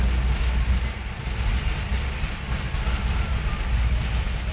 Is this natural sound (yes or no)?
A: yes